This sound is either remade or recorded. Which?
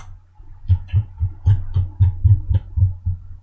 recorded